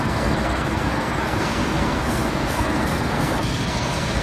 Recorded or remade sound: remade